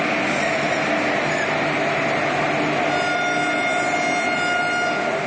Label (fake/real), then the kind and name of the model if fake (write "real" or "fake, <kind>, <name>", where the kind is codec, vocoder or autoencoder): real